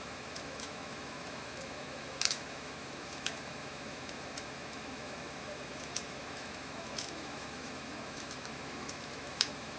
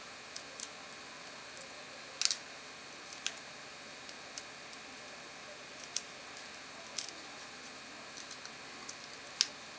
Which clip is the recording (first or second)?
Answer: second